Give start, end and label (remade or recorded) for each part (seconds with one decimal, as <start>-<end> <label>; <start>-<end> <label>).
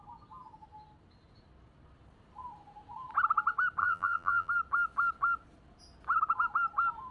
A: 0.0-3.8 recorded; 3.8-4.5 remade; 4.5-7.1 recorded